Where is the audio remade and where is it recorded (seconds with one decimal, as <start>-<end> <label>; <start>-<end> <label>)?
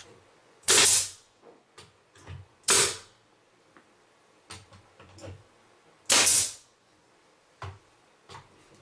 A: 0.0-0.4 recorded; 0.4-2.6 remade; 2.6-6.3 recorded; 6.3-7.1 remade; 7.1-8.8 recorded